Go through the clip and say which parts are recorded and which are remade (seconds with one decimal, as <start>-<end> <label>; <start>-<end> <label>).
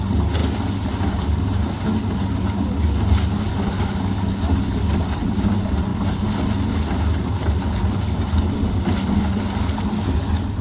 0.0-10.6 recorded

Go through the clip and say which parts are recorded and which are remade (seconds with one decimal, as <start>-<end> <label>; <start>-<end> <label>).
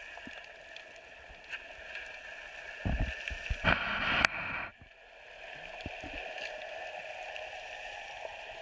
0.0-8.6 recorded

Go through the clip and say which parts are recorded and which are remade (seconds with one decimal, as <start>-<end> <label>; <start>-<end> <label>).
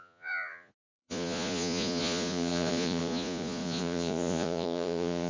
0.0-5.3 remade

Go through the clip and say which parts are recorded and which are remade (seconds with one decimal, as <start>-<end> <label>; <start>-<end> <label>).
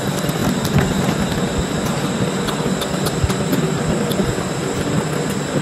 0.0-5.6 recorded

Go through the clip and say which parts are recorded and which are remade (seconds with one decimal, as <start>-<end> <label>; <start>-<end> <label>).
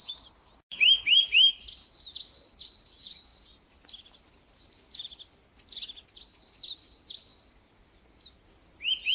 0.0-9.1 recorded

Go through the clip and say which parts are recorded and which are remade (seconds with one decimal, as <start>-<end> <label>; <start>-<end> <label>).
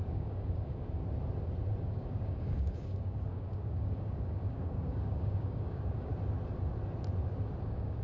0.0-1.0 remade; 1.0-1.8 recorded; 1.8-6.1 remade; 6.1-7.6 recorded; 7.6-8.0 remade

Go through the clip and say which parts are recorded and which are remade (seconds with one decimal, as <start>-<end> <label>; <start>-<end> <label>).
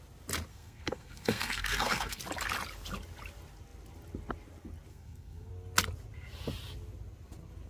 0.0-0.5 recorded; 0.5-2.2 remade; 2.2-4.9 recorded; 4.9-5.5 remade; 5.5-7.7 recorded